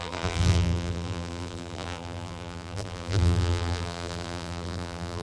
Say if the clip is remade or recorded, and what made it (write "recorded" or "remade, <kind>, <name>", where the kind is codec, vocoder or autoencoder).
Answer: remade, vocoder, BigVGAN v2